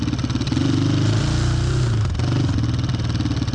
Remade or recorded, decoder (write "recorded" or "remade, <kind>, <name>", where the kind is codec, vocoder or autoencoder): recorded